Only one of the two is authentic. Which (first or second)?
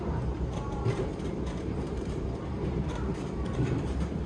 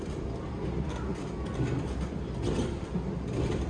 second